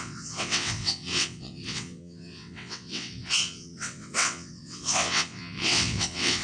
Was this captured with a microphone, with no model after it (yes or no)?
no